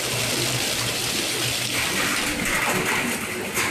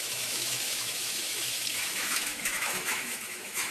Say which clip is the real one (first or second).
first